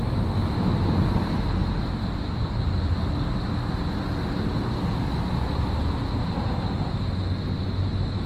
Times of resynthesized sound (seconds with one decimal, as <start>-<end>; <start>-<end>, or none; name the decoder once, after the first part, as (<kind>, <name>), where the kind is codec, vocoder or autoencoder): none